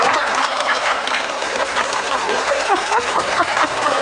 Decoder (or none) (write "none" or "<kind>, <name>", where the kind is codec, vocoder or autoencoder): codec, SNAC